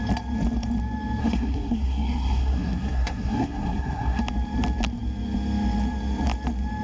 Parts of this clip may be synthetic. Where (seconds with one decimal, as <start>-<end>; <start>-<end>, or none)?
1.2-4.2